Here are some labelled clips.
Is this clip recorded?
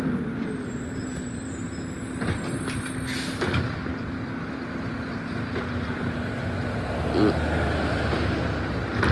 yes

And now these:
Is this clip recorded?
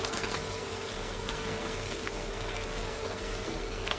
no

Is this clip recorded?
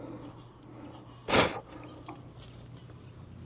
yes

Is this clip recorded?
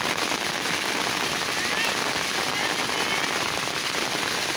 yes